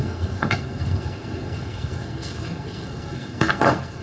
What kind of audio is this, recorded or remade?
remade